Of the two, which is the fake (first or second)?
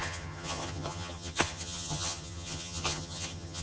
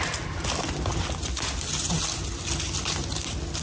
first